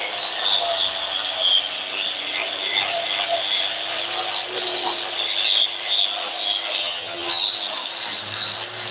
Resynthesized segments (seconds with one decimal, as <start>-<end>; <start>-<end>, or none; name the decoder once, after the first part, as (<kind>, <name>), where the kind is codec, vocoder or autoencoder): 6.8-7.4 (vocoder, HiFi-GAN)